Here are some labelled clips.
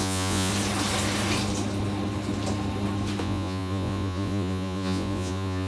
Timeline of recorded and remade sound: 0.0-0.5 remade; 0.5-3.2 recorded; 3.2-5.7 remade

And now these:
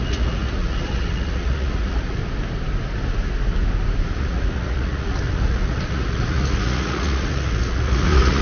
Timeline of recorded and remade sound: 0.0-2.2 remade; 2.2-4.2 recorded; 4.2-8.4 remade